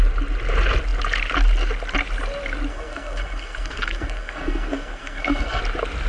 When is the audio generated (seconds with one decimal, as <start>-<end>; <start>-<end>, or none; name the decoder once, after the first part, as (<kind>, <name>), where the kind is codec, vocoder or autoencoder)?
2.7-5.6 (codec, SNAC)